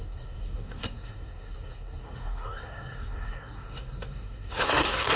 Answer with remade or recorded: remade